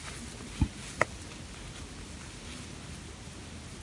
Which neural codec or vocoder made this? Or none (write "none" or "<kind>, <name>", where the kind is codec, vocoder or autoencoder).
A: none